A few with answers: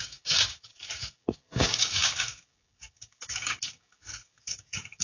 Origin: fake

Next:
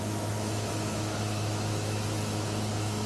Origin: fake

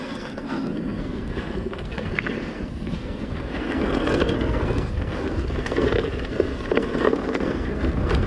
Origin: fake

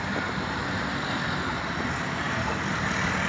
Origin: fake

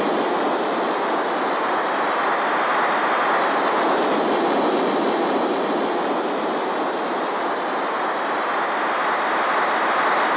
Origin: real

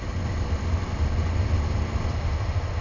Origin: real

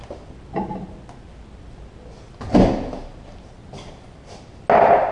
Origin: real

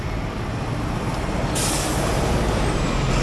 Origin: real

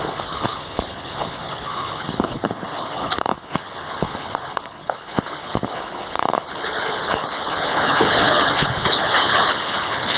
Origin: fake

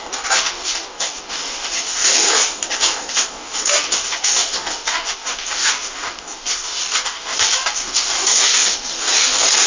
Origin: fake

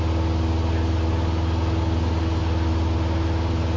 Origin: real